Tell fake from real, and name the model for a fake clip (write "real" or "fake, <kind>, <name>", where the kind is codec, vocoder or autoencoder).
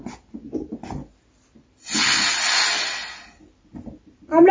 real